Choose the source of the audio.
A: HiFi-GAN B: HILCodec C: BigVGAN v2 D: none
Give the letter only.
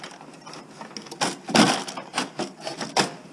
D